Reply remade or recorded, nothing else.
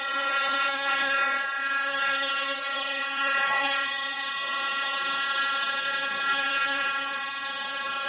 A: remade